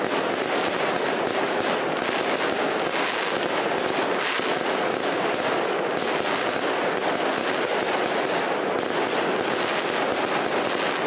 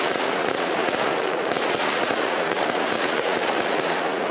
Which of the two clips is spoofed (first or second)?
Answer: second